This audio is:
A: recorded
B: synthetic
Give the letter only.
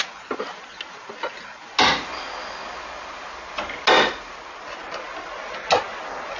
A